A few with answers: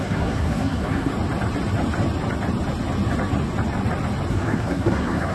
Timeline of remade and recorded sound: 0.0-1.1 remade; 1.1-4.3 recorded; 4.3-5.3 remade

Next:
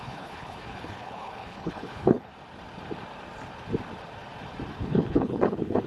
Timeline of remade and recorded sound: 0.0-2.3 remade; 2.3-4.7 recorded; 4.7-5.9 remade

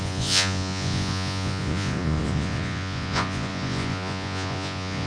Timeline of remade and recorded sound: 0.0-5.1 remade

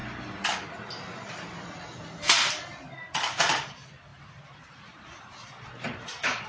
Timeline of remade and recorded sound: 0.0-4.1 recorded; 4.1-6.5 remade

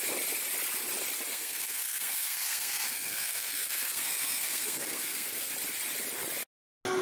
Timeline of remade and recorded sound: 0.0-1.3 recorded; 1.3-5.5 remade; 5.5-7.0 recorded

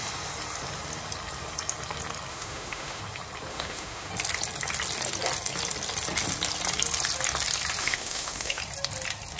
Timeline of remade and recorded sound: 0.0-2.3 recorded; 2.3-3.0 remade; 3.0-3.5 recorded; 3.5-4.1 remade; 4.1-7.8 recorded; 7.8-8.6 remade; 8.6-9.4 recorded